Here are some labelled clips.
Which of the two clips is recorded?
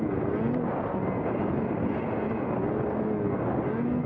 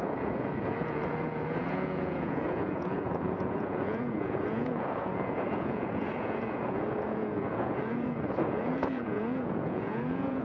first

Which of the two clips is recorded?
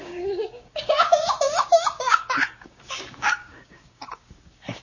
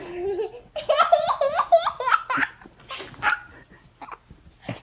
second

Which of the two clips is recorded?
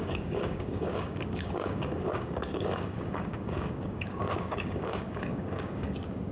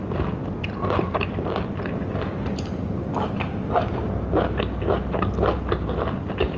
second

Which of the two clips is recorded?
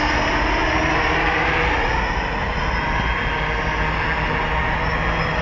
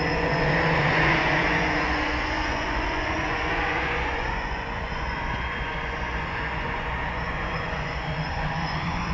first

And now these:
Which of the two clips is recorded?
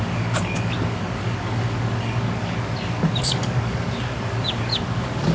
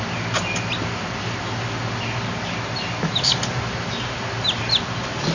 second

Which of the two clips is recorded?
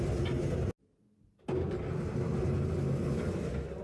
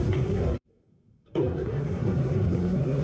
first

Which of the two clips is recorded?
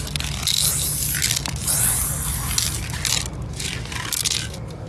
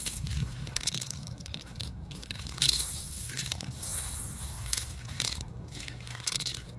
first